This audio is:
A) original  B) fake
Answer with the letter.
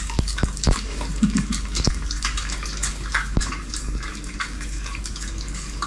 B